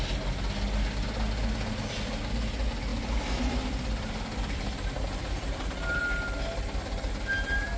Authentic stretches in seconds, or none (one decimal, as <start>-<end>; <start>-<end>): 0.0-2.9; 6.0-7.8